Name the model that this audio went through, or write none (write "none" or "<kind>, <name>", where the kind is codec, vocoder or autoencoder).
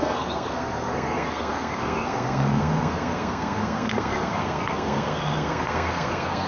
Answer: codec, SNAC